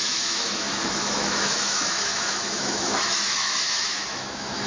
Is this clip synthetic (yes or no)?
yes